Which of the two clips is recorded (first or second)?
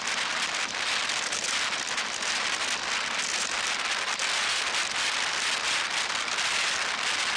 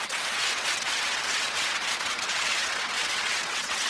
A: first